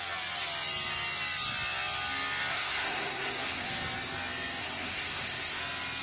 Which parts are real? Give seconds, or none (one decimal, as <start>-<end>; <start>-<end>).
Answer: 0.0-2.5; 3.7-4.6; 5.6-6.0